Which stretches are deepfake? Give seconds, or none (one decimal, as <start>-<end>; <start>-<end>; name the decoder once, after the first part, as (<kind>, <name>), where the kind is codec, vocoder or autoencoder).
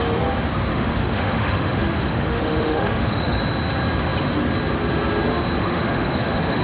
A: 0.7-3.4 (autoencoder, DAC-VAE); 5.6-6.6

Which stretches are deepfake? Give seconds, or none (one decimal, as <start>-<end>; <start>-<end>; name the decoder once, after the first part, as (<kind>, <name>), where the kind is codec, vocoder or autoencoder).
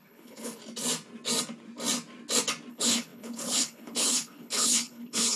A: 0.0-0.6 (codec, HILCodec); 2.7-5.4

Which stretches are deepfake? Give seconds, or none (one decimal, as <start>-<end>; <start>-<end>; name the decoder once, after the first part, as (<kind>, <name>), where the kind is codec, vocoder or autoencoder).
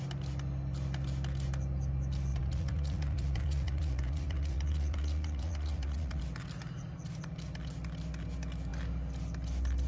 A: 2.3-6.2 (vocoder, Vocos)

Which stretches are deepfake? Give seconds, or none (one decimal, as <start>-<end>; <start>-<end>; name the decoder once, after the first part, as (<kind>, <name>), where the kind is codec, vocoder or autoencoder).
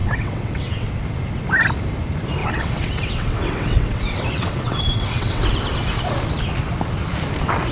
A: 0.0-0.9 (vocoder, WaveNeXt); 2.4-5.4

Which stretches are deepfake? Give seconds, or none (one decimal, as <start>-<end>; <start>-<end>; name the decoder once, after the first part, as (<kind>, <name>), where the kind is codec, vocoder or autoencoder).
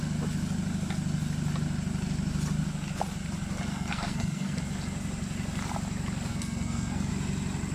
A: 3.7-4.6 (codec, SNAC); 6.3-7.1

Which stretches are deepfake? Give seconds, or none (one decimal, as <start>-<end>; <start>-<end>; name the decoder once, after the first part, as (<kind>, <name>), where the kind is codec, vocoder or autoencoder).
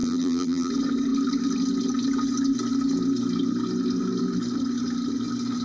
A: 0.0-0.7 (vocoder, BigVGAN v2)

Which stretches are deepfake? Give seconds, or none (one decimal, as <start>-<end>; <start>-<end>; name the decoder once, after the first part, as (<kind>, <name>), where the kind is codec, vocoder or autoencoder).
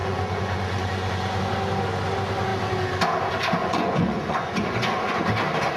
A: 0.0-1.4 (vocoder, Vocos); 3.6-5.2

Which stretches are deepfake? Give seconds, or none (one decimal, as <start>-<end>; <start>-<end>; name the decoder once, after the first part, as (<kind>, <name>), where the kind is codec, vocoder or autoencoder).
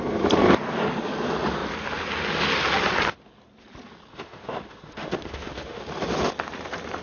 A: 4.1-5.8 (autoencoder, DAC-VAE)